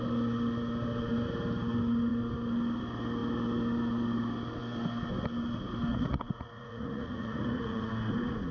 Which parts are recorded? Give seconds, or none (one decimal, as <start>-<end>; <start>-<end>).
0.0-5.9; 7.9-8.5